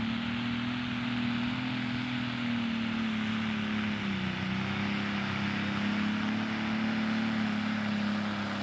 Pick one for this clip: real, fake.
real